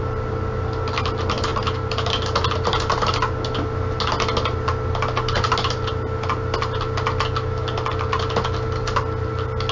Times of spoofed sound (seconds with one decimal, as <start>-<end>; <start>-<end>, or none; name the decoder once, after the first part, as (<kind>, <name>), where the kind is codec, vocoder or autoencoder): none